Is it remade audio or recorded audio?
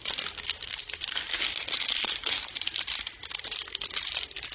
recorded